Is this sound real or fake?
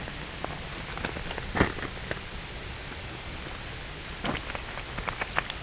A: real